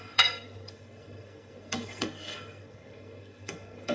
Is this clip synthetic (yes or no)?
yes